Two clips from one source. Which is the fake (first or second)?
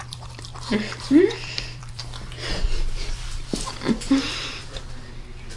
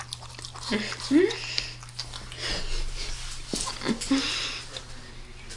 first